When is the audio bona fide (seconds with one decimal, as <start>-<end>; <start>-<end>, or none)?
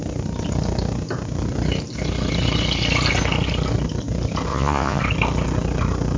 0.0-4.5; 5.0-6.2